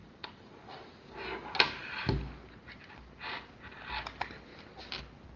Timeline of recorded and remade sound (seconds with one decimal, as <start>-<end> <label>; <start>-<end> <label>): 0.0-0.9 remade; 0.9-5.4 recorded